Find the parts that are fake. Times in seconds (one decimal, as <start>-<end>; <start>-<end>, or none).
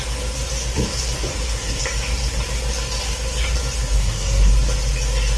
1.3-1.8; 4.0-4.5